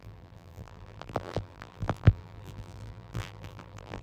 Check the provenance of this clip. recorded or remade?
remade